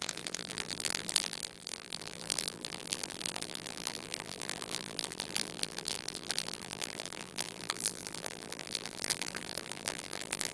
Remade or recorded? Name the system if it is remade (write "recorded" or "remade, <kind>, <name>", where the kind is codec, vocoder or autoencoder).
remade, vocoder, BigVGAN v2